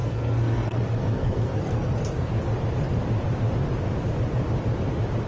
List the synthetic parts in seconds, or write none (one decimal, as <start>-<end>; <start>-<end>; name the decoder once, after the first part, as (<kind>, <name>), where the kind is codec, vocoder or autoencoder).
0.0-2.3 (codec, SNAC)